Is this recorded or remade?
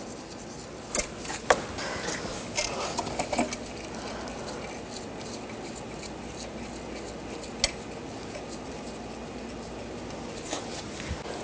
recorded